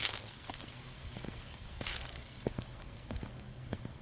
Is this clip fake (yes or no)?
yes